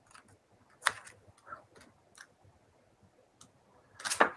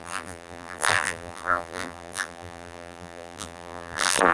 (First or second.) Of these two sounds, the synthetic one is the second